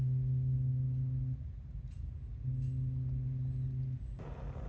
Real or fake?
real